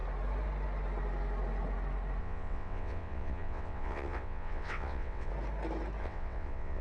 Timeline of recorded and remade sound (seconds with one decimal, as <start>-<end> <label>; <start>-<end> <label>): 0.0-2.2 recorded; 2.2-5.3 remade; 5.3-6.0 recorded; 6.0-6.8 remade